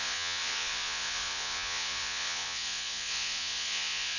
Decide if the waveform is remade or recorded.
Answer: remade